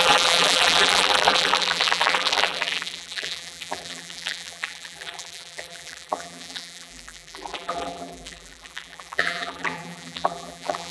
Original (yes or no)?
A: no